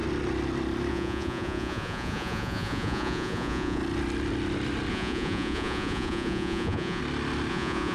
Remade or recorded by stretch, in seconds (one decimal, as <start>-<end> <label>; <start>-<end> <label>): 0.0-0.9 recorded; 0.9-3.8 remade; 3.8-4.9 recorded; 4.9-7.0 remade; 7.0-7.5 recorded; 7.5-7.9 remade